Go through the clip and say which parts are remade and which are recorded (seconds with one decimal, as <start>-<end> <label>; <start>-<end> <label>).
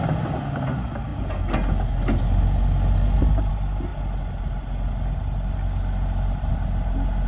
0.0-7.3 recorded